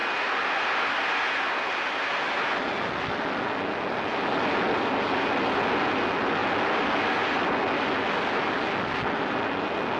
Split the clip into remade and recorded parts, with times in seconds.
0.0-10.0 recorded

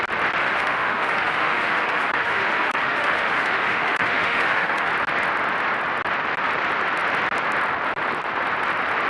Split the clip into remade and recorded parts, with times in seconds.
0.0-0.4 recorded; 0.4-4.9 remade; 4.9-9.1 recorded

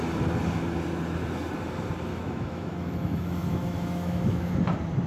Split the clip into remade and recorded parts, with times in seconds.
0.0-2.1 recorded; 2.1-4.6 remade; 4.6-5.1 recorded

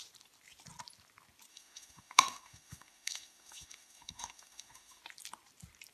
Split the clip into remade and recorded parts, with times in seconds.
0.0-1.5 recorded; 1.5-5.0 remade; 5.0-5.9 recorded